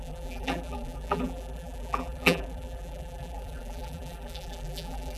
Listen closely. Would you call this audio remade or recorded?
remade